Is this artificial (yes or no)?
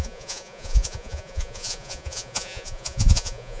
yes